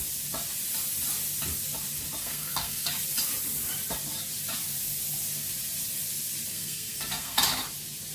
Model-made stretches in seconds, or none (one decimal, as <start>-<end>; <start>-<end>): 2.2-2.9; 6.5-7.4

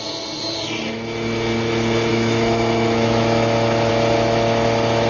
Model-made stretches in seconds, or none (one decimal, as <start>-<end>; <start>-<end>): 2.1-3.9

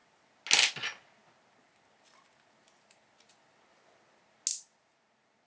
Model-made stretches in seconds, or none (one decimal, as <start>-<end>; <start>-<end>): none